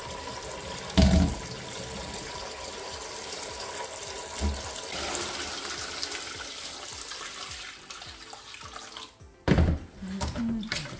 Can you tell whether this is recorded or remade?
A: recorded